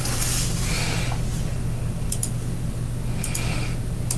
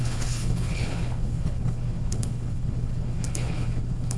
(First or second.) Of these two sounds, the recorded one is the first